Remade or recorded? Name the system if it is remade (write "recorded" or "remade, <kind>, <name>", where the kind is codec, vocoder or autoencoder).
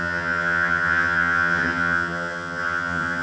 remade, vocoder, HiFi-GAN